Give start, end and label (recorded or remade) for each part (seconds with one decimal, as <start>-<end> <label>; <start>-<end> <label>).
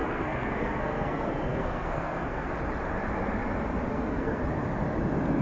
0.0-2.5 remade; 2.5-3.9 recorded; 3.9-4.4 remade; 4.4-5.4 recorded